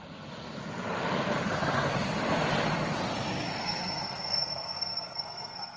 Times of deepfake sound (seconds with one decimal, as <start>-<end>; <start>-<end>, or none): 3.6-5.8